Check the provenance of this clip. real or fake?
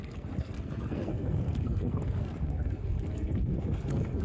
fake